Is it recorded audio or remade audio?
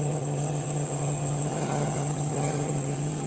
remade